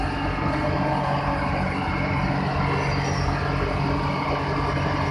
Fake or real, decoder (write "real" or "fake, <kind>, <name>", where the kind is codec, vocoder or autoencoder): real